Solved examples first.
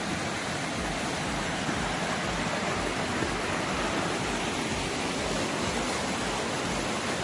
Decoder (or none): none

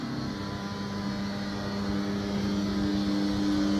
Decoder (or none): none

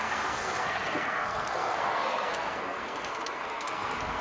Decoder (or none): codec, SNAC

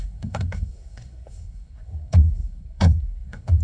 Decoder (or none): codec, SNAC